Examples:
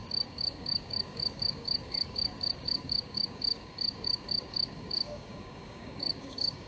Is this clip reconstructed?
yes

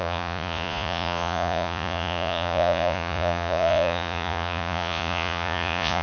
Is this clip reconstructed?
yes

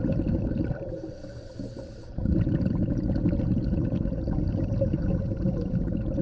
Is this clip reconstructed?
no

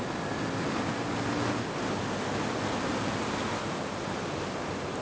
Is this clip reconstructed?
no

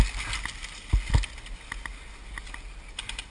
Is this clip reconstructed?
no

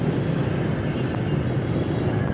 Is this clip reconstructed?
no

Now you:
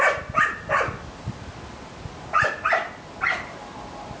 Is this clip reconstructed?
no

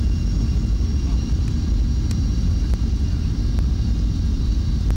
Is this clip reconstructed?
no